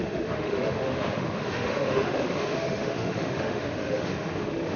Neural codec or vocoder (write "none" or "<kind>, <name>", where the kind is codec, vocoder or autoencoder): autoencoder, DAC-VAE